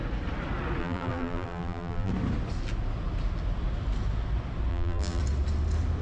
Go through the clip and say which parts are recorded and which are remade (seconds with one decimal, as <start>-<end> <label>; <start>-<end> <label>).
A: 0.0-0.8 recorded; 0.8-2.1 remade; 2.1-4.7 recorded; 4.7-5.2 remade; 5.2-6.0 recorded